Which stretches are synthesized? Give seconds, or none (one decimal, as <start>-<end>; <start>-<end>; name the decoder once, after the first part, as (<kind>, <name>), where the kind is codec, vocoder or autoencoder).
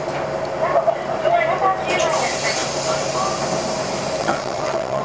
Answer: 4.2-5.0 (vocoder, WaveNeXt)